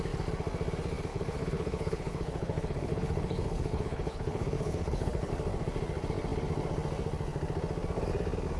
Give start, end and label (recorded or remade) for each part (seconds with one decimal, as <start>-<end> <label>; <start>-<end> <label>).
0.0-1.1 recorded; 1.1-5.3 remade; 5.3-8.6 recorded